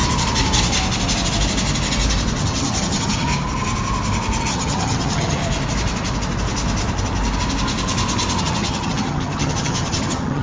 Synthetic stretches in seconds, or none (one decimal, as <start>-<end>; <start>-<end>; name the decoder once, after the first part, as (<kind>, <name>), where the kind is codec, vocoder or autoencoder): 2.4-3.3 (vocoder, HiFi-GAN); 4.4-5.4; 8.4-10.4